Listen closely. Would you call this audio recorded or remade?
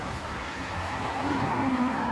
remade